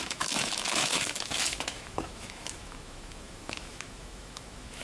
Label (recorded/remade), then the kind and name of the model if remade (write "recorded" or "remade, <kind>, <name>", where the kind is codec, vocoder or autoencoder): remade, autoencoder, DAC-VAE